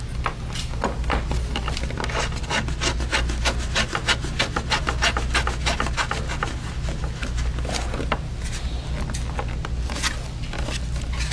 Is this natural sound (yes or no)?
yes